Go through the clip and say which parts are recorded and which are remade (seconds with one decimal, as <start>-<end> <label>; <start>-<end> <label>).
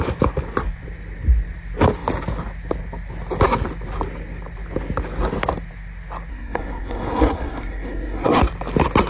0.0-6.3 recorded; 6.3-8.4 remade; 8.4-9.1 recorded